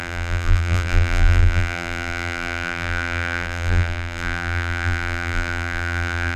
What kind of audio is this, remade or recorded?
remade